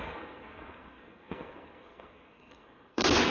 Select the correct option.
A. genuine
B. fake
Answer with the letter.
B